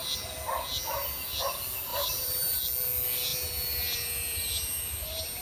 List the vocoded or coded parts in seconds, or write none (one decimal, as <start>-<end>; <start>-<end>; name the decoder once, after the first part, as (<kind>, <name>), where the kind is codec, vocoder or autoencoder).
1.9-2.6 (vocoder, BigVGAN v2); 3.3-5.4